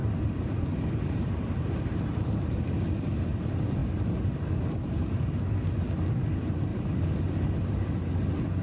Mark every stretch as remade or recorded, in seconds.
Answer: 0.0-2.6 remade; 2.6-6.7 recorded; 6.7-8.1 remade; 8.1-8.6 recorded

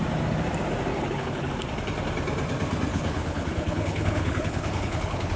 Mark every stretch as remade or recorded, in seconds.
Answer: 0.0-0.9 recorded; 0.9-1.5 remade; 1.5-2.9 recorded; 2.9-5.4 remade

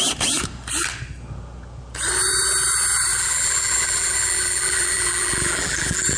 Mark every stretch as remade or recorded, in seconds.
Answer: 0.0-3.1 recorded; 3.1-6.2 remade

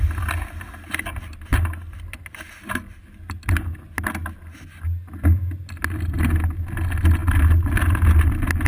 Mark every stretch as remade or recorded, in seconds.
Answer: 0.0-8.7 recorded

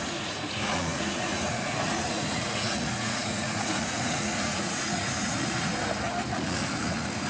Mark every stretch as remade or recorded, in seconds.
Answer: 0.0-5.7 remade; 5.7-6.3 recorded; 6.3-7.3 remade

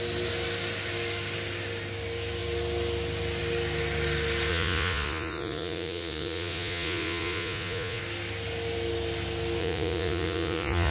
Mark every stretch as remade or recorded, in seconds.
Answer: 0.0-4.5 recorded; 4.5-8.0 remade; 8.0-9.6 recorded; 9.6-10.9 remade